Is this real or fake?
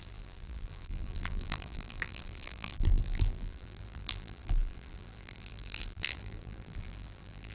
fake